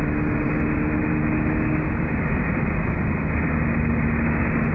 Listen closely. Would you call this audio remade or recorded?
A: recorded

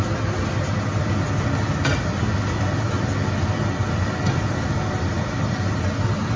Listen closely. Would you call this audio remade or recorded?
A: recorded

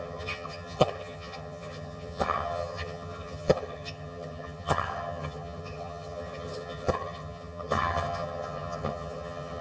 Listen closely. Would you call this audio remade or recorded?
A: remade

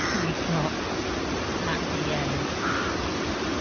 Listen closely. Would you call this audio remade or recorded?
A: recorded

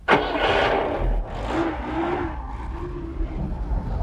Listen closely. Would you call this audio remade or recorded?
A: recorded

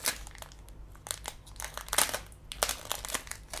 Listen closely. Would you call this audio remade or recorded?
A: recorded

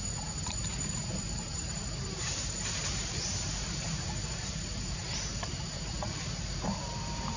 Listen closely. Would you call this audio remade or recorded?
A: remade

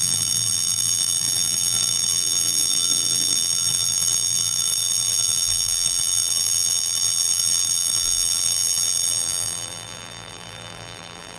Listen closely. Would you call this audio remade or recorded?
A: remade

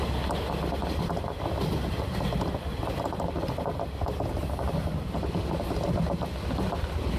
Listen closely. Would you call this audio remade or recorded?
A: recorded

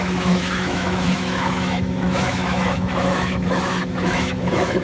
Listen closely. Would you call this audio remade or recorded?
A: remade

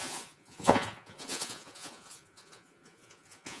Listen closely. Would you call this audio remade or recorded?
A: remade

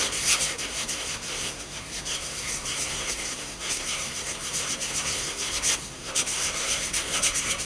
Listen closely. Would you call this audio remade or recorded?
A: remade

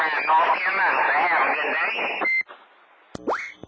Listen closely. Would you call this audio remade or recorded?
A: recorded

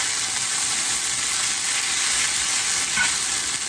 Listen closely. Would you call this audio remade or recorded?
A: recorded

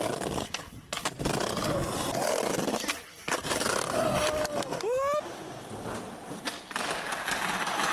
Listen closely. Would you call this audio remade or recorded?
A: recorded